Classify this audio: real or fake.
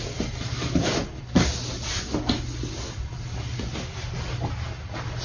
real